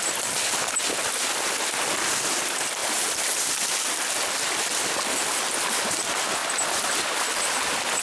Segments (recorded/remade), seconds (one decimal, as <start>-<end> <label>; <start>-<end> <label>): 0.0-8.0 recorded